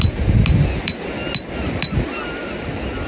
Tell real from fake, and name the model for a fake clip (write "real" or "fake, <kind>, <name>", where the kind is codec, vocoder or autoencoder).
real